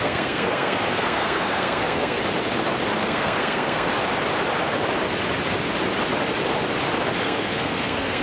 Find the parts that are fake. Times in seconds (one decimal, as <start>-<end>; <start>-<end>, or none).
0.0-2.2; 3.0-3.9; 7.2-8.2